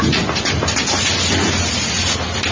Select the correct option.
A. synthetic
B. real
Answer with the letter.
B